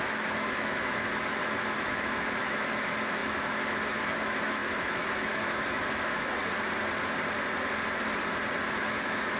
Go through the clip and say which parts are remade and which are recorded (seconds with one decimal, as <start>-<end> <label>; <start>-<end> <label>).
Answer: 0.0-6.4 remade; 6.4-8.7 recorded; 8.7-9.4 remade

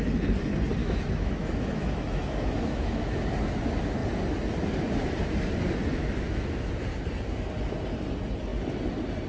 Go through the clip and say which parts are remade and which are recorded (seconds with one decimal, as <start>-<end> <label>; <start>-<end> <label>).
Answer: 0.0-0.8 recorded; 0.8-3.2 remade; 3.2-5.9 recorded; 5.9-6.7 remade; 6.7-9.3 recorded

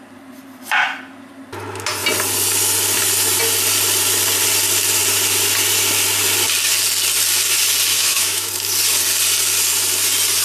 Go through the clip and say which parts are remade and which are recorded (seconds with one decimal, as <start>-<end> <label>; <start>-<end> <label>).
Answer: 0.0-7.9 recorded; 7.9-8.5 remade; 8.5-10.4 recorded